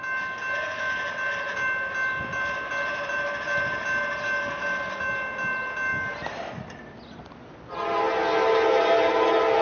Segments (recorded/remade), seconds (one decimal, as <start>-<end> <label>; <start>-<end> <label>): 0.0-9.6 recorded